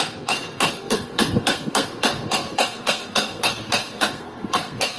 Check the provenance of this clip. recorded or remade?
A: remade